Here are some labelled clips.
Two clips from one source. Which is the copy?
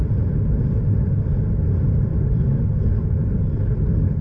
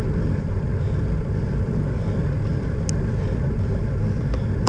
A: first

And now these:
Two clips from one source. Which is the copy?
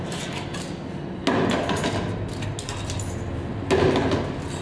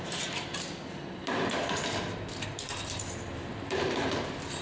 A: second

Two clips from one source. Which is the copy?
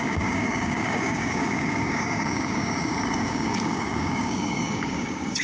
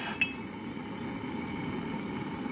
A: first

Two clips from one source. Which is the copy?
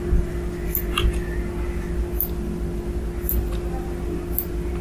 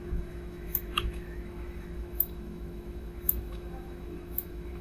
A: second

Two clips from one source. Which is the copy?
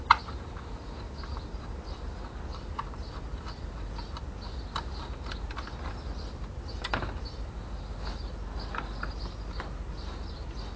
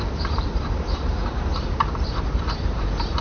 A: second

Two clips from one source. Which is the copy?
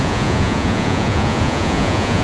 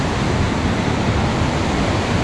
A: first